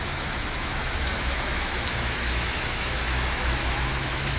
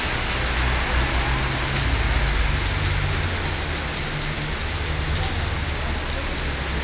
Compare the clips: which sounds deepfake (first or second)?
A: first